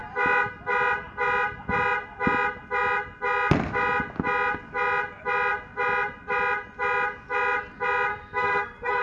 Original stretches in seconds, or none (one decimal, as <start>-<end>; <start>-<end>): 0.0-8.1